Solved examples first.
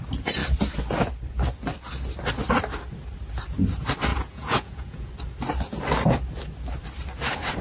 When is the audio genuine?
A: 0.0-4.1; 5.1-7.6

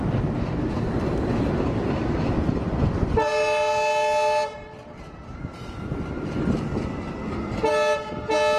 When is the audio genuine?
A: 0.0-8.6

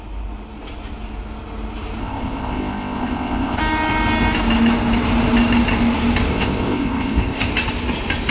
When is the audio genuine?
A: 0.0-2.0; 3.6-6.3; 7.5-8.3

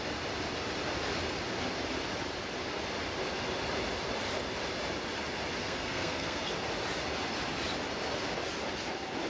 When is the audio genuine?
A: 0.0-5.6; 6.5-9.3

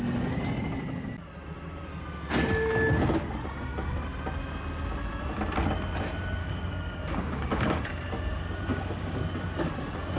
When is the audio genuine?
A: 0.0-6.4; 7.8-8.7; 9.2-10.2